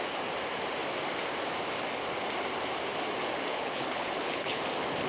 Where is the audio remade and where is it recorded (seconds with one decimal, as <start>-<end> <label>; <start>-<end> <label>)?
0.0-3.5 recorded; 3.5-4.6 remade; 4.6-5.1 recorded